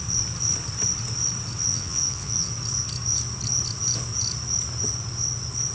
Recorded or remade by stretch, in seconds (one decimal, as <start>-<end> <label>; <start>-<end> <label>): 0.0-1.7 recorded; 1.7-2.5 remade; 2.5-5.7 recorded